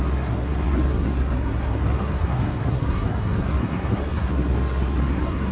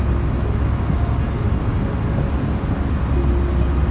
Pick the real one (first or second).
second